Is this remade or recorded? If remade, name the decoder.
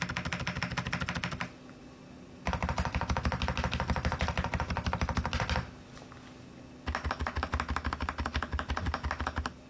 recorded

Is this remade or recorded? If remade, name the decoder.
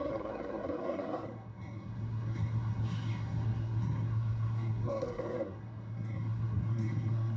remade, codec, SNAC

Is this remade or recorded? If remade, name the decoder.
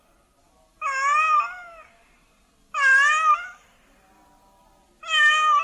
recorded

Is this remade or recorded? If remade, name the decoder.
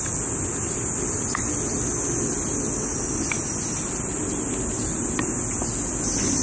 recorded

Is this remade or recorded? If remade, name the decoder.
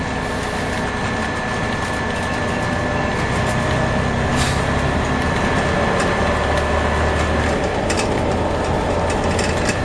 recorded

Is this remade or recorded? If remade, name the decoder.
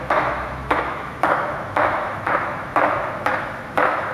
remade, autoencoder, DAC-VAE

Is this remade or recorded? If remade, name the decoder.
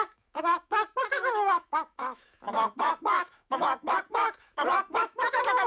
remade, autoencoder, DAC-VAE